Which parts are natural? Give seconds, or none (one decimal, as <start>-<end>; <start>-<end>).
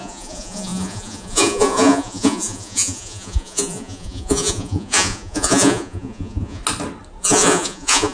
6.6-7.2